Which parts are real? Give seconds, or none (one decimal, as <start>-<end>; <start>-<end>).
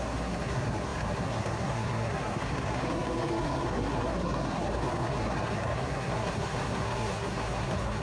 none